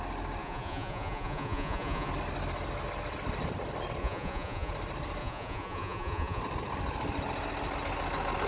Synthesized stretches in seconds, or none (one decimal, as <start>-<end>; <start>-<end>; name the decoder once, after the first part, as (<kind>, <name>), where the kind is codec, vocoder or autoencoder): 0.4-2.1 (vocoder, Vocos); 4.0-4.7; 5.2-6.4